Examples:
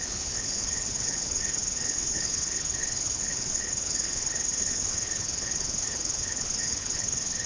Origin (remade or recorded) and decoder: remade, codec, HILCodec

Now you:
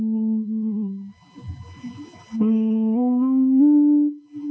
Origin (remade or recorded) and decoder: recorded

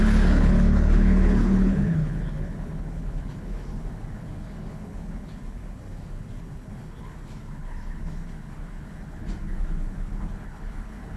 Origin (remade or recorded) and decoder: remade, codec, HILCodec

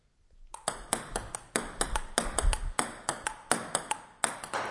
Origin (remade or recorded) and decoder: recorded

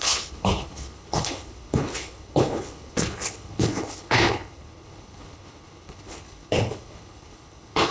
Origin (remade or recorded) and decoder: remade, codec, HILCodec